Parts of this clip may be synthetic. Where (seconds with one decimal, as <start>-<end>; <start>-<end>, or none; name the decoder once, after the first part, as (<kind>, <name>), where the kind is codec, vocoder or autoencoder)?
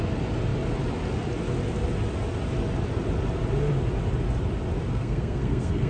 4.9-5.9 (codec, SNAC)